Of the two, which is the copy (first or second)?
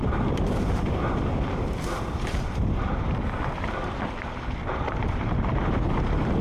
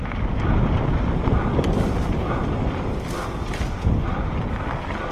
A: first